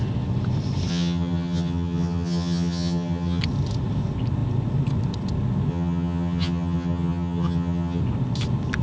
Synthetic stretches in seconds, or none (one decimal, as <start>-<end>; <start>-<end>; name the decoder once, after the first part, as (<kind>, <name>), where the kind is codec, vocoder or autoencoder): 0.9-3.4 (vocoder, HiFi-GAN); 5.7-8.0